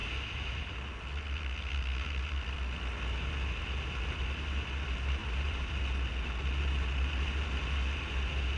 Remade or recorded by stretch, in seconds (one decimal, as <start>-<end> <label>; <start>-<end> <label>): 0.0-5.2 recorded; 5.2-5.8 remade; 5.8-8.6 recorded